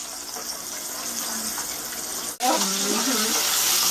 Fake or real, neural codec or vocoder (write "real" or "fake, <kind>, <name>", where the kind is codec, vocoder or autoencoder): real